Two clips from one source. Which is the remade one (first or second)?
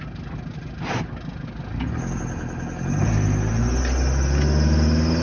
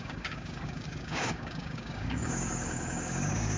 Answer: second